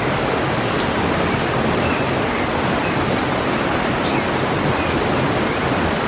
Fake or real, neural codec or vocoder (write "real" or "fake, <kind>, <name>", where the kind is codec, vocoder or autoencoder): real